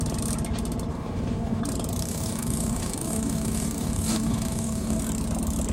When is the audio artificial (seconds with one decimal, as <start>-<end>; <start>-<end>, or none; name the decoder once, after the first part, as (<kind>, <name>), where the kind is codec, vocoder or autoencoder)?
0.9-1.6 (codec, DAC); 2.0-5.0